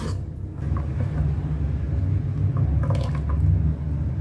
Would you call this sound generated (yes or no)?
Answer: no